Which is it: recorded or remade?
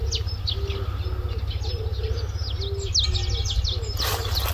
recorded